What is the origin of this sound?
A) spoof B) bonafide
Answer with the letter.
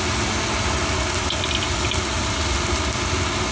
B